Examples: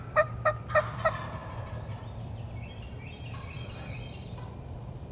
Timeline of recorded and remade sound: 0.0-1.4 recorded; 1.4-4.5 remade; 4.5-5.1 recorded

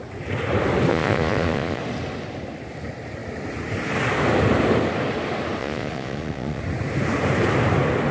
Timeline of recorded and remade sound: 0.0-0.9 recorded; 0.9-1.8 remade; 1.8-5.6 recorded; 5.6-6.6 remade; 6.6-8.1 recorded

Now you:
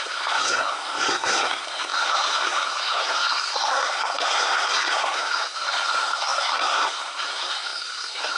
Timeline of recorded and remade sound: 0.0-8.4 remade

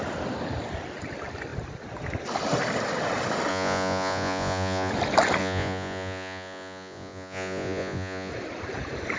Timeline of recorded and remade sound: 0.0-3.5 recorded; 3.5-4.9 remade; 4.9-5.4 recorded; 5.4-8.3 remade; 8.3-9.2 recorded